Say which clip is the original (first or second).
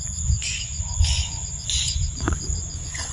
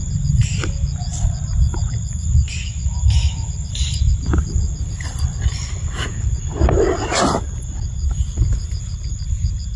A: second